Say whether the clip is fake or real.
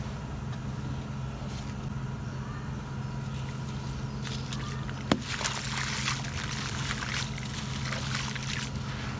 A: real